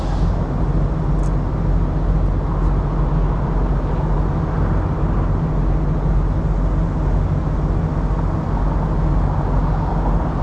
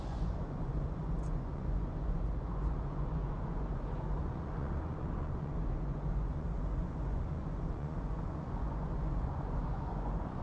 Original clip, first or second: first